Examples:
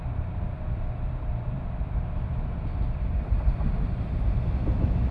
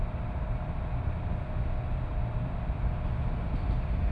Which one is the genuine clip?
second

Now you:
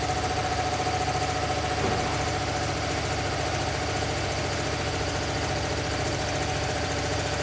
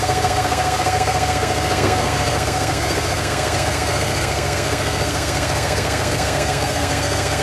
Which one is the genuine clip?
first